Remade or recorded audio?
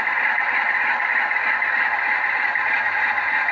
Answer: recorded